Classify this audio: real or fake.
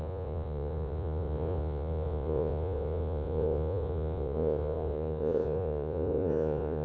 fake